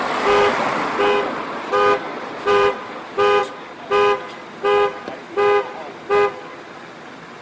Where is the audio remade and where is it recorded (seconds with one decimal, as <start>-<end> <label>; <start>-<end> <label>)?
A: 0.0-2.1 recorded; 2.1-3.0 remade; 3.0-3.4 recorded; 3.4-3.9 remade; 3.9-7.4 recorded